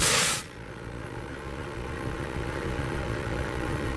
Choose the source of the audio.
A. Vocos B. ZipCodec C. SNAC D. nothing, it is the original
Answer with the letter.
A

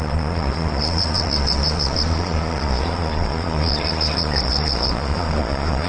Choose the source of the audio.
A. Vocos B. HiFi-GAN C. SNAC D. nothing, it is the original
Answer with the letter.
A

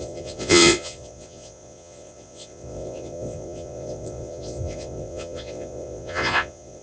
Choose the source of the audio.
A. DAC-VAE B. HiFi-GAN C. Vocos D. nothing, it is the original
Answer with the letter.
C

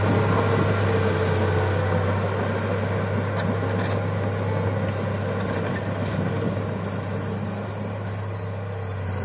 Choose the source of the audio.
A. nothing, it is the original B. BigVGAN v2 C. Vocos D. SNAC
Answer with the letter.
A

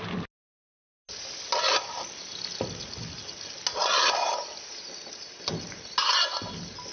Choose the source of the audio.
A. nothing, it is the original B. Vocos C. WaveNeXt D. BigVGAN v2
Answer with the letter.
A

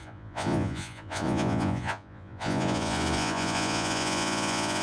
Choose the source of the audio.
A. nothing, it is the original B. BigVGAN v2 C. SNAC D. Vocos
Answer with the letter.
D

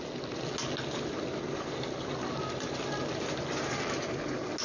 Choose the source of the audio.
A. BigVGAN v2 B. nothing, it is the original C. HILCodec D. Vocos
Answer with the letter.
B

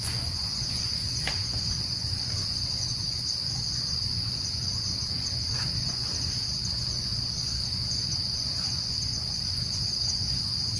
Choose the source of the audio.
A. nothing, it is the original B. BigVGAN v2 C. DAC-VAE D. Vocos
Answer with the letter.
D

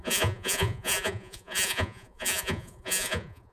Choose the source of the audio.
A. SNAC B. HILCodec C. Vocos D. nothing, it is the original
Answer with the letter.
C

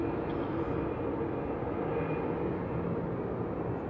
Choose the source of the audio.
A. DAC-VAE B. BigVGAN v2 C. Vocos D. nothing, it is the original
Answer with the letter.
D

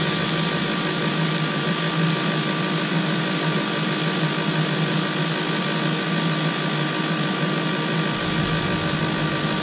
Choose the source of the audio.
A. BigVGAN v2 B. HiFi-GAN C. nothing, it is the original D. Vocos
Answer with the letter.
C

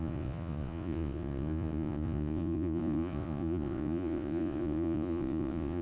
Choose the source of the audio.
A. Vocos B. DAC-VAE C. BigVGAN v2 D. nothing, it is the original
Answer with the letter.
A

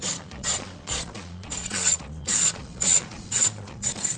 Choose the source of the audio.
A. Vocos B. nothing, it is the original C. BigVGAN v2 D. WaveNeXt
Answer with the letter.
A